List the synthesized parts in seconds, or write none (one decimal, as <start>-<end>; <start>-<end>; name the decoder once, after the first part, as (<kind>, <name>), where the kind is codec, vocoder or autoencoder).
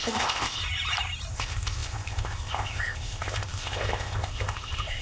0.0-0.6 (codec, ZipCodec); 1.3-5.0